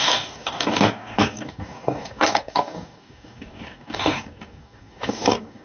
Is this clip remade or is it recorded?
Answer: remade